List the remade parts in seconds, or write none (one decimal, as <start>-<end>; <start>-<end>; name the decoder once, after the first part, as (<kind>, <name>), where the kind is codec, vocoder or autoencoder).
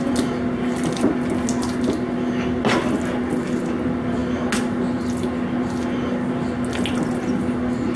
none